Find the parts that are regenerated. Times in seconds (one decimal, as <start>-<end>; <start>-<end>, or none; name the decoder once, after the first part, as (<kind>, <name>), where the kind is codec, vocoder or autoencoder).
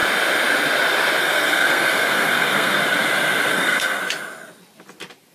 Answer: 1.2-2.8 (codec, SNAC); 3.5-4.0